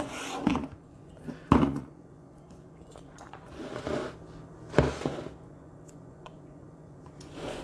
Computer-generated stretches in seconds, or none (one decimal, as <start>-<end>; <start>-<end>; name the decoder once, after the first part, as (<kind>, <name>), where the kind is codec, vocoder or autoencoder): 0.0-4.0 (vocoder, Vocos); 5.4-7.6